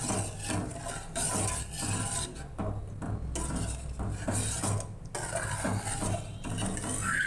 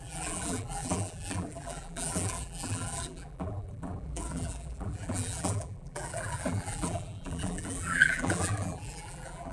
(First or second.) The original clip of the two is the first